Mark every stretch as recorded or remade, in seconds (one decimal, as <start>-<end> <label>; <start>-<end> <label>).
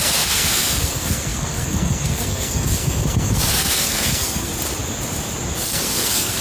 0.0-4.5 remade; 4.5-5.6 recorded; 5.6-6.4 remade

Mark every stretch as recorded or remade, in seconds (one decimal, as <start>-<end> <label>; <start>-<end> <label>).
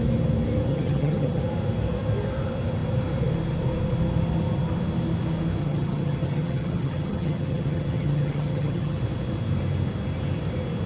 0.0-0.7 recorded; 0.7-1.4 remade; 1.4-5.6 recorded; 5.6-9.0 remade; 9.0-10.9 recorded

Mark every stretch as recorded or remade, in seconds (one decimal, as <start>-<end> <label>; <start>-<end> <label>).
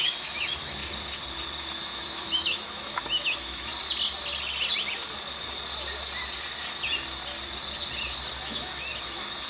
0.0-0.8 remade; 0.8-1.7 recorded; 1.7-3.7 remade; 3.7-8.4 recorded; 8.4-9.5 remade